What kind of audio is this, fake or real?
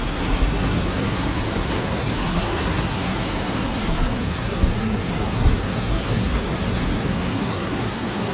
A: fake